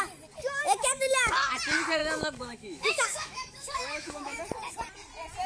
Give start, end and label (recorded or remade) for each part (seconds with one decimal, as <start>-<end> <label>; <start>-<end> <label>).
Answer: 0.0-0.6 recorded; 0.6-1.3 remade; 1.3-2.0 recorded; 2.0-4.4 remade; 4.4-5.5 recorded